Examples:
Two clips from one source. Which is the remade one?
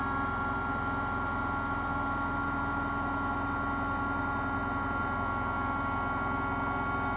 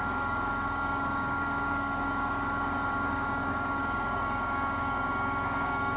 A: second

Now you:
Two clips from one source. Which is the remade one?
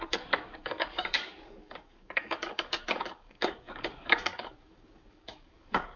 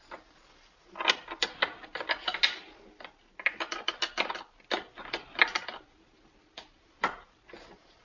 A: first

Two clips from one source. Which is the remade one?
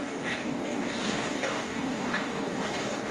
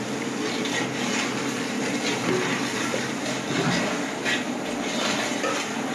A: first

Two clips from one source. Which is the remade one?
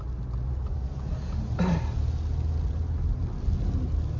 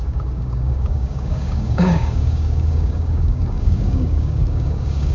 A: second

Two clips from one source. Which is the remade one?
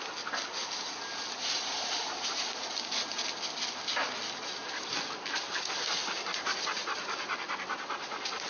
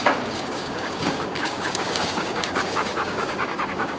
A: second